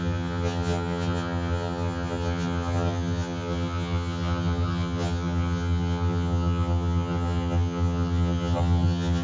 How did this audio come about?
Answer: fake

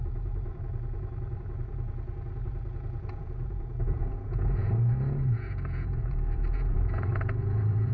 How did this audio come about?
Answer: fake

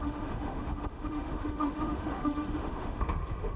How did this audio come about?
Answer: fake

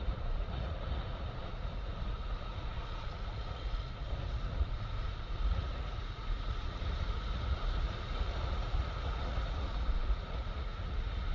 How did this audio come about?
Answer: fake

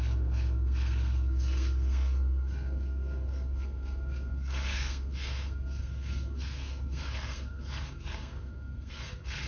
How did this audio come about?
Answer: fake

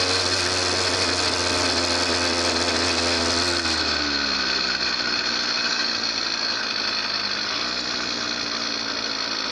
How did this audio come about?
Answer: real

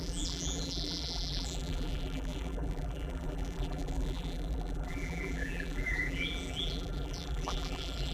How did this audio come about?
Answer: fake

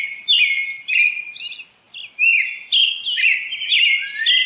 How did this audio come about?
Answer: real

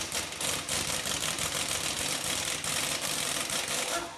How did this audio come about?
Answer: real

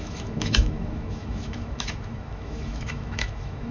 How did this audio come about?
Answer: fake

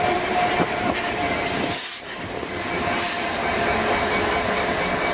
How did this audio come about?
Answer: fake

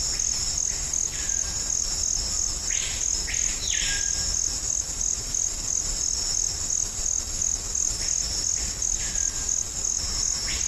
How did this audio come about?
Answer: real